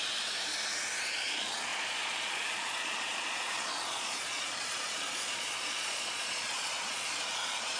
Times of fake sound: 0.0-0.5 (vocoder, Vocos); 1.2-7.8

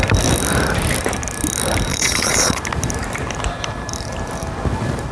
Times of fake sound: 1.9-2.6 (vocoder, Vocos)

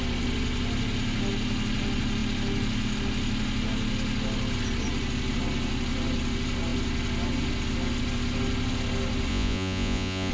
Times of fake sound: 9.3-10.3 (vocoder, Vocos)

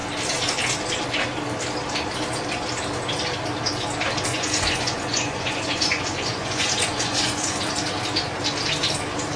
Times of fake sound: 4.3-7.7 (vocoder, Vocos)

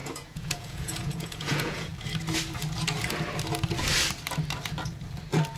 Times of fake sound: 0.0-1.9 (vocoder, Vocos)

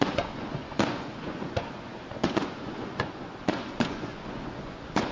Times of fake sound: 0.0-5.1 (vocoder, Vocos)

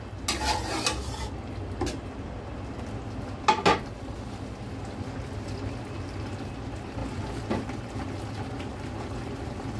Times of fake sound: none